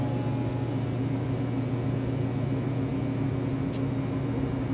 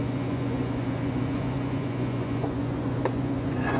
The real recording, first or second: first